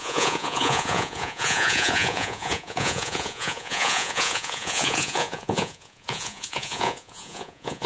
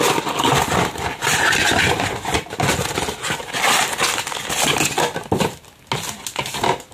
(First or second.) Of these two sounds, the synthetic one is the first